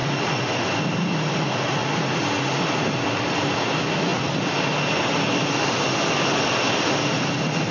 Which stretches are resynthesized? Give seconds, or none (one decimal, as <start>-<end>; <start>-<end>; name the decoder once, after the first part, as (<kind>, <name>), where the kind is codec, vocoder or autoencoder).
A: none